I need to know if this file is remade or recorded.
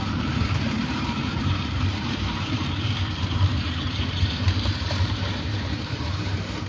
remade